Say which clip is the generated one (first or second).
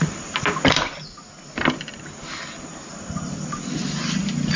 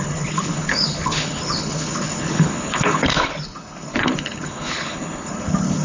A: second